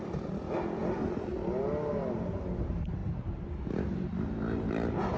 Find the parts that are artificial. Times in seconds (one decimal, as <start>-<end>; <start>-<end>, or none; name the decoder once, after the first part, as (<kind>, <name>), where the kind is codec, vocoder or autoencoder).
3.0-4.7 (vocoder, BigVGAN v2)